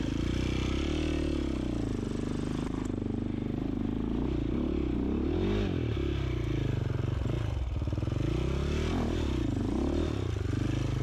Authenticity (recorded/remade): recorded